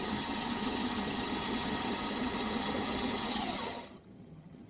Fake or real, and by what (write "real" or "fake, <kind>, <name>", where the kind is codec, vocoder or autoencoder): fake, vocoder, HiFi-GAN